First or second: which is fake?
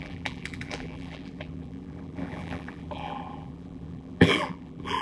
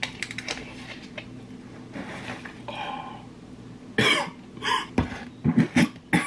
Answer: first